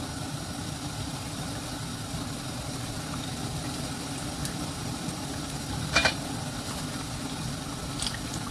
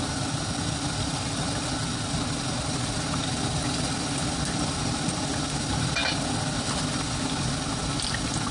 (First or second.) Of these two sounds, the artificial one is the first